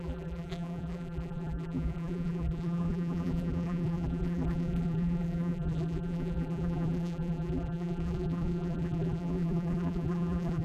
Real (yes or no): no